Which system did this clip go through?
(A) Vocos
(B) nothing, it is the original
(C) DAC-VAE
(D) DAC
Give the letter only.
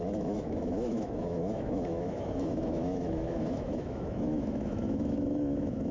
C